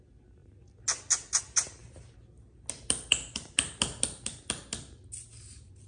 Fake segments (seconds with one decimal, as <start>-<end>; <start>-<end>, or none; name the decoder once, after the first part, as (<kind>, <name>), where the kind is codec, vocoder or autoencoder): none